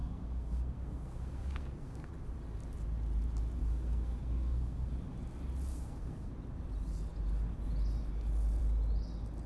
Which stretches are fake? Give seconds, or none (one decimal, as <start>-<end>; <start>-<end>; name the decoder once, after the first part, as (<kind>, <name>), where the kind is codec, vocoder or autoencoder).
0.0-2.1 (codec, SNAC); 3.6-4.9; 5.7-6.3